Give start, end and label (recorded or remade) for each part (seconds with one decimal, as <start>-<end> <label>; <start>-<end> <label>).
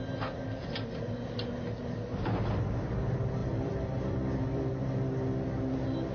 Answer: 0.0-3.4 recorded; 3.4-4.6 remade; 4.6-6.1 recorded